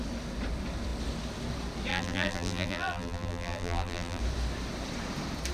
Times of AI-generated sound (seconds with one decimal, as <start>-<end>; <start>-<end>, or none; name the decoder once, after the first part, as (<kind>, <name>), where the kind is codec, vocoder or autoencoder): 1.9-4.2 (vocoder, BigVGAN v2)